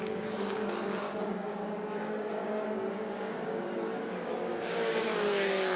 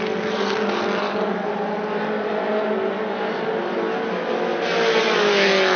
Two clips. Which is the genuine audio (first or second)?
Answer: second